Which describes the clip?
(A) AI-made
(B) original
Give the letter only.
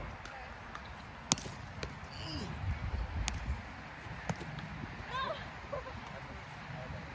B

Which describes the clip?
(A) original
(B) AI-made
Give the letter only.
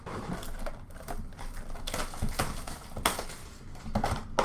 A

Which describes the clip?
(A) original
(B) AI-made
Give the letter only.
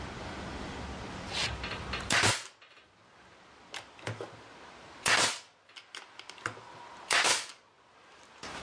A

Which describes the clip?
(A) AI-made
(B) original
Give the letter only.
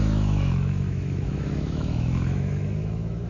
A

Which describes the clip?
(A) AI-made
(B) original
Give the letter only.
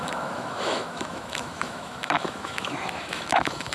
A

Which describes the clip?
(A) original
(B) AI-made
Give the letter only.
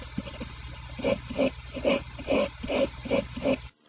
A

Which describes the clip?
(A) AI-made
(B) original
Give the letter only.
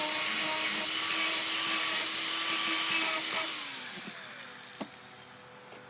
B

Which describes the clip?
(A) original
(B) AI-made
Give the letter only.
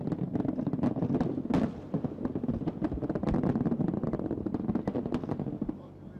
A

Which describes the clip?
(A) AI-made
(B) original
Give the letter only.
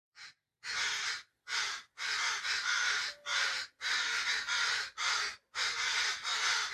B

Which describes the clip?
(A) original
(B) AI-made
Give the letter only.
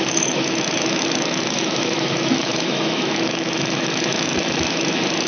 B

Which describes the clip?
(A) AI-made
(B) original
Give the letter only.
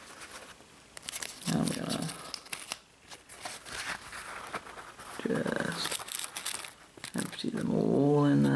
B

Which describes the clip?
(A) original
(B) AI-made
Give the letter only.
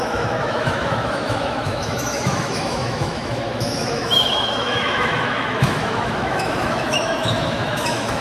B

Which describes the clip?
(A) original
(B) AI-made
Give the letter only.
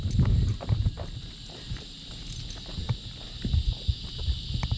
A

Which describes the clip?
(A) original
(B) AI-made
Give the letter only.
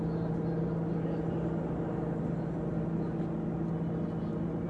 A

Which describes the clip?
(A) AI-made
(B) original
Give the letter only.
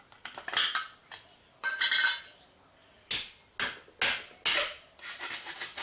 B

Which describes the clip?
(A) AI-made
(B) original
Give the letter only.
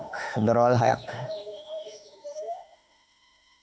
A